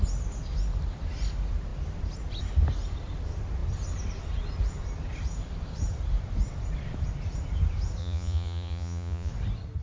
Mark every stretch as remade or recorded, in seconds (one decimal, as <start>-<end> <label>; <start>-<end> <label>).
0.0-8.0 recorded; 8.0-9.3 remade; 9.3-9.8 recorded